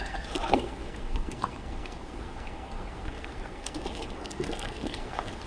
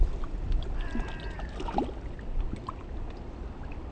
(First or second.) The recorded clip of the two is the second